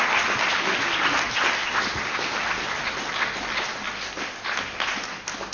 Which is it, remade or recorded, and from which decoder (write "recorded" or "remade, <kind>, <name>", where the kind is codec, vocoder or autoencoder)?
recorded